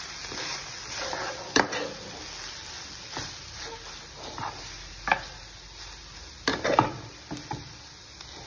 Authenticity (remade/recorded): recorded